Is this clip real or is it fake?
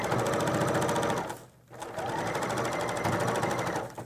real